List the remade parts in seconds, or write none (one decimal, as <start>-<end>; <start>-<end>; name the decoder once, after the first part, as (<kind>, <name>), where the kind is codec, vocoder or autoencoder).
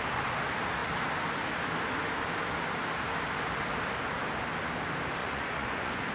5.2-6.1 (vocoder, Vocos)